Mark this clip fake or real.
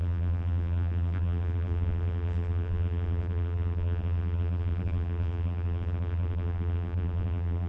fake